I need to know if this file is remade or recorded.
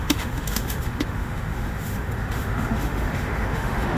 remade